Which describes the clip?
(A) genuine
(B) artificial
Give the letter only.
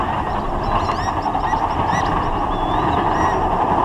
A